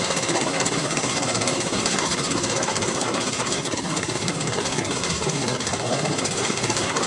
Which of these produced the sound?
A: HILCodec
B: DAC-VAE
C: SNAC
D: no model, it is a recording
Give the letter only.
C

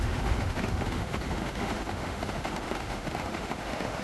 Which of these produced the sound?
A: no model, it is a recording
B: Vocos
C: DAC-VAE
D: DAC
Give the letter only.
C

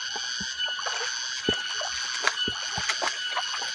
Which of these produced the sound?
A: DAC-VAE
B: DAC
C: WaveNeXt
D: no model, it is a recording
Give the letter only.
D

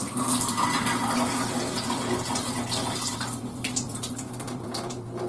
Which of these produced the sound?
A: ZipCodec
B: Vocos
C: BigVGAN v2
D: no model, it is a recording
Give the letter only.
C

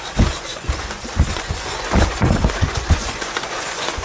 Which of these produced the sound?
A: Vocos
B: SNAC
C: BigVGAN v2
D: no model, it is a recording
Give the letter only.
A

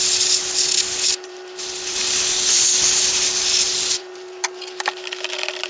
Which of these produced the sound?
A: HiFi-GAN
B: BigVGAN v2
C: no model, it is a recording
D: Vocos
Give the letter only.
B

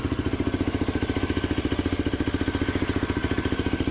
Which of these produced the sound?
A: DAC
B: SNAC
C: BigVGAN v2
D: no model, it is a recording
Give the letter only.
D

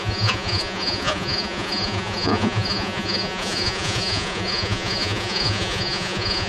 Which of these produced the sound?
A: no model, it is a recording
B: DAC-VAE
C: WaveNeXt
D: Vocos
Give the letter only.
D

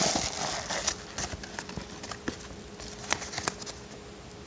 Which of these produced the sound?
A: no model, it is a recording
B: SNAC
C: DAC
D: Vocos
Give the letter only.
A